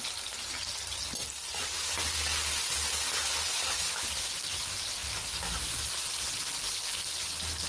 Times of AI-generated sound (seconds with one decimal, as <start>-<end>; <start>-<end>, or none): none